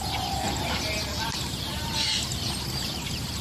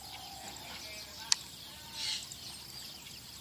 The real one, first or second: second